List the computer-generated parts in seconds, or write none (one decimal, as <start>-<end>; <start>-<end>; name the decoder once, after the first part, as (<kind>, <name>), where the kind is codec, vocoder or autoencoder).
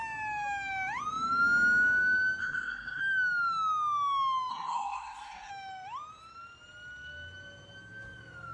2.4-3.0 (codec, SNAC); 4.5-5.5